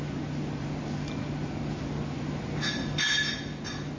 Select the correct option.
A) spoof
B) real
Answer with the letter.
B